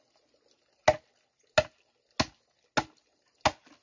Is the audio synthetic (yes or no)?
no